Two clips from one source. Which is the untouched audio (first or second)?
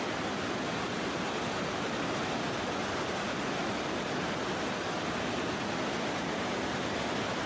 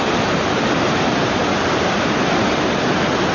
first